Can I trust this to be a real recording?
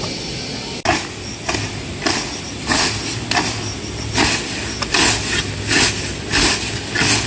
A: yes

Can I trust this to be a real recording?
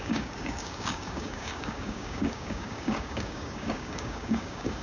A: no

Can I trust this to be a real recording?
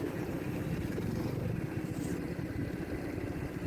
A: yes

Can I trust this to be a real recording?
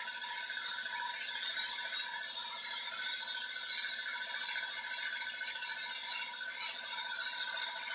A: yes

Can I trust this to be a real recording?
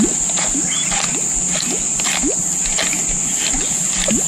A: yes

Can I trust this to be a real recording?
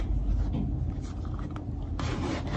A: yes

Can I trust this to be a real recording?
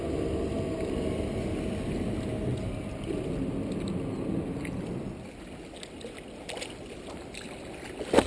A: yes